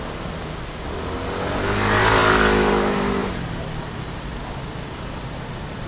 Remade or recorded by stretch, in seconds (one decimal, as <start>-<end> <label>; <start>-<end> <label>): 0.0-3.2 recorded; 3.2-4.3 remade; 4.3-5.9 recorded